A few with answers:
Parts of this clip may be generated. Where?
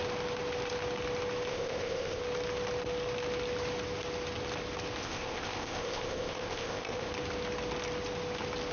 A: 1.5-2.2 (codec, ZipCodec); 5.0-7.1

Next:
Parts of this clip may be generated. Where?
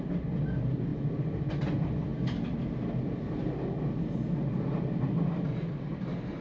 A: none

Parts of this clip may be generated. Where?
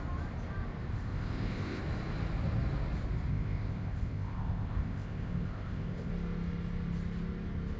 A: 0.9-1.8 (codec, ZipCodec); 3.3-6.1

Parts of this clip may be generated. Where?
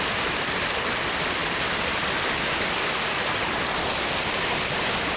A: none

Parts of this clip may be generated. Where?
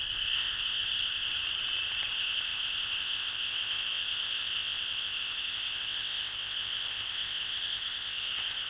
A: 0.0-1.3 (codec, ZipCodec); 2.1-8.7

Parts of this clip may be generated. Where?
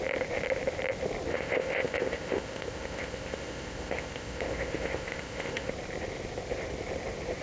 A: 1.3-5.7 (codec, ZipCodec)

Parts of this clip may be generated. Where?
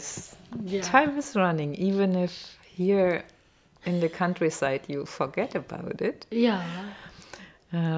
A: none